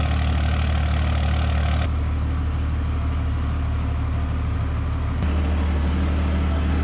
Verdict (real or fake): real